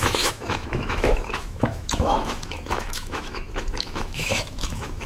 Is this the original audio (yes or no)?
no